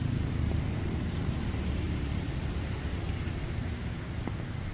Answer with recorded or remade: remade